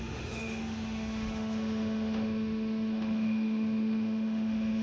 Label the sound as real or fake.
fake